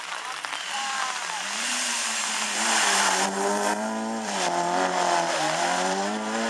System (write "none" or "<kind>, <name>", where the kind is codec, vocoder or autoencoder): vocoder, BigVGAN v2